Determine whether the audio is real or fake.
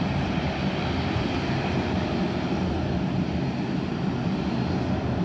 real